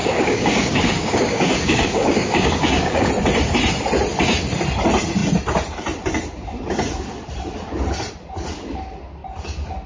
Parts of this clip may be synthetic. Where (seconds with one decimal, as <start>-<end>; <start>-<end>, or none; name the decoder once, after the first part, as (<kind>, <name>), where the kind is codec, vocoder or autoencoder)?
0.0-3.1 (codec, DAC)